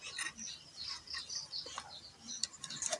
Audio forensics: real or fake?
real